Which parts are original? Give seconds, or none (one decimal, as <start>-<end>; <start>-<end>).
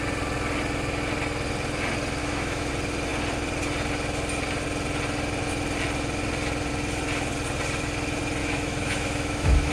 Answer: 0.0-2.2; 2.7-8.4